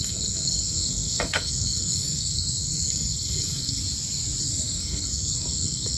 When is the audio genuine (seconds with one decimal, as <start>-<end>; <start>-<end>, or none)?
3.8-4.4